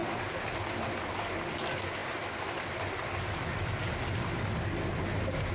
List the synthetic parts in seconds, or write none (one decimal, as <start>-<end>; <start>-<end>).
0.0-0.5; 2.0-5.5